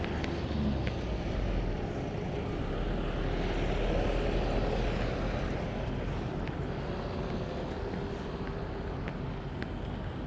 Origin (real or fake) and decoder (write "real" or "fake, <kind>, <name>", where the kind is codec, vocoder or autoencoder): real